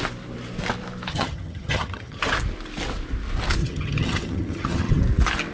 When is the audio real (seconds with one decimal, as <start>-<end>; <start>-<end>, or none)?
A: 0.0-1.1; 2.2-3.6; 5.0-5.5